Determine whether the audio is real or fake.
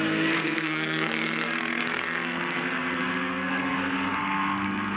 fake